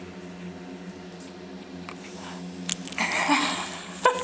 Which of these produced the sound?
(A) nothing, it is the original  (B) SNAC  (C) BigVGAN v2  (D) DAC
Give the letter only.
A